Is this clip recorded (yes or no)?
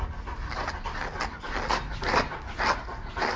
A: yes